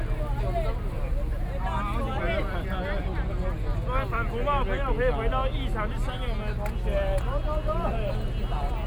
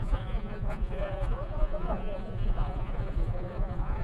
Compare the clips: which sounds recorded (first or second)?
first